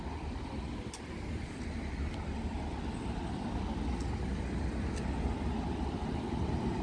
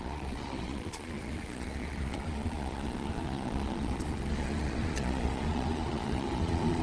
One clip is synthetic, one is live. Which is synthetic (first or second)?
second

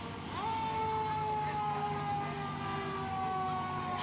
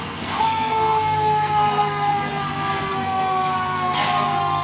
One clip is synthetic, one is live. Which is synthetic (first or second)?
second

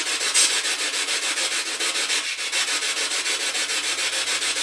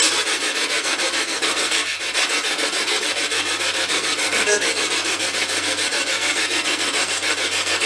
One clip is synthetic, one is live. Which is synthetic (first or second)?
second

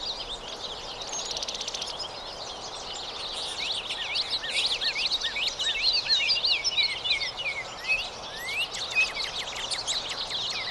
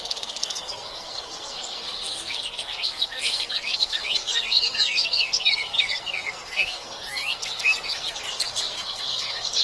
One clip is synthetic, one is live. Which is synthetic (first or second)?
second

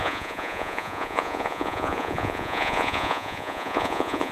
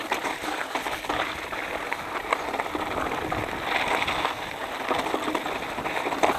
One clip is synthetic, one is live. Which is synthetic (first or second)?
first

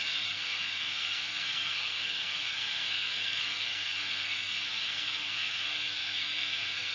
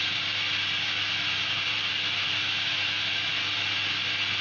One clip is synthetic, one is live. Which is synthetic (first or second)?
first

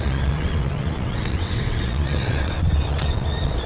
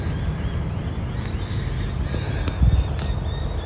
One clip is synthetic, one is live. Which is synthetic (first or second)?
first